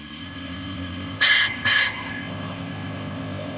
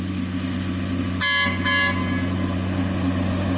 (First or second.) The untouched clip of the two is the second